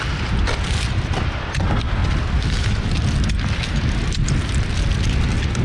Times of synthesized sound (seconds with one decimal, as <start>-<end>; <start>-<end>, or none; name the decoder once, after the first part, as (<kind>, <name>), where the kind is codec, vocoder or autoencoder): none